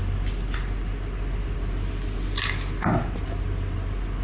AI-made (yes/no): no